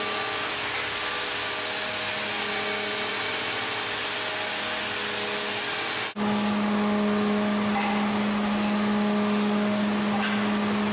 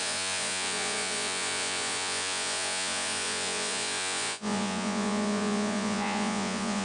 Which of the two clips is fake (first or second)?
second